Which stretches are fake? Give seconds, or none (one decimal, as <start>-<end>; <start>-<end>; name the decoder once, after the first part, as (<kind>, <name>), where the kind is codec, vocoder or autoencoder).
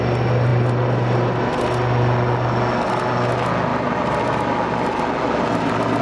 none